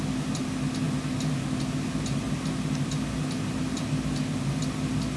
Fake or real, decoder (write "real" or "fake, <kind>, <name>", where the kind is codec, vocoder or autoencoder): real